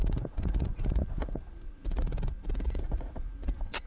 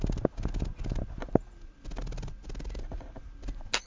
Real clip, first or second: second